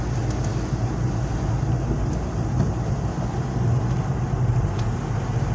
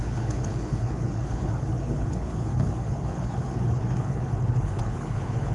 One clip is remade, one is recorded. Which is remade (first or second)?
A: second